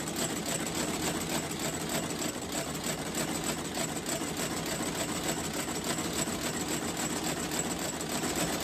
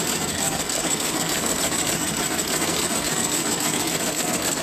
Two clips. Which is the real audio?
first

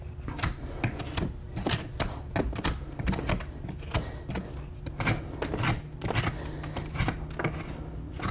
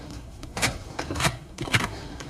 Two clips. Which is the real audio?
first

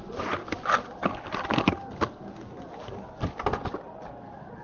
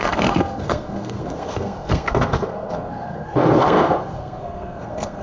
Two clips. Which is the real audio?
first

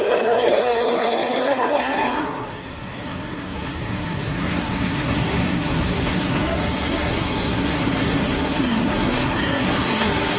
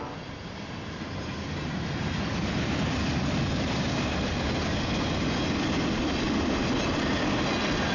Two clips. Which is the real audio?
second